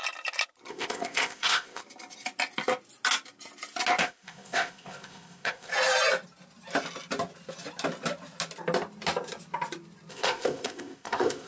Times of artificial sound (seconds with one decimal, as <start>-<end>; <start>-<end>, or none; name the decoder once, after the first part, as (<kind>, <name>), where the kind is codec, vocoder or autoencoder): 0.7-1.8 (codec, ZipCodec); 4.0-5.7; 10.1-11.5